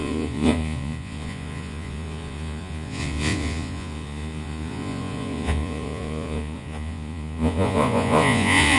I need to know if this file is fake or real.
fake